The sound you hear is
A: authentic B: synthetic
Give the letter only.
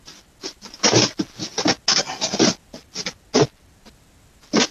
A